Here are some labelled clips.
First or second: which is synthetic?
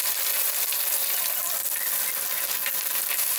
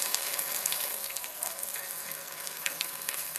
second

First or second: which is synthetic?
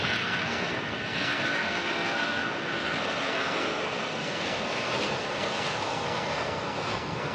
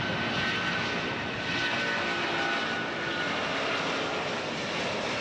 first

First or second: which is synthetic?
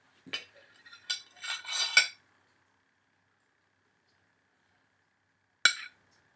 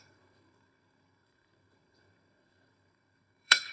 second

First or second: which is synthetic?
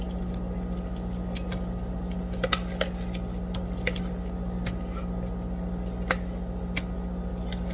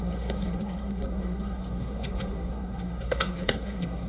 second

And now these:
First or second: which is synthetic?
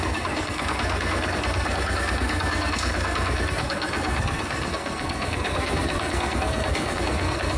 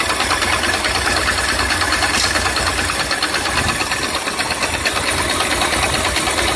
first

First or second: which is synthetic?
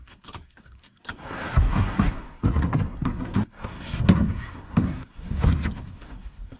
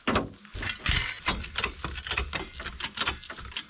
first